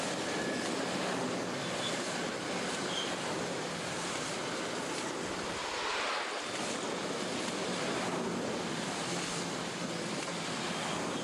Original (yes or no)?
yes